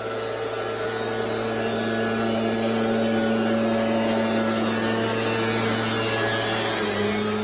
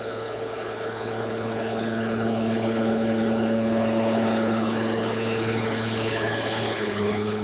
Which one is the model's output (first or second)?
second